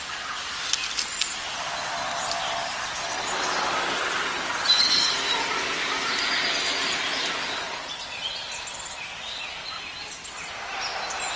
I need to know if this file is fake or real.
real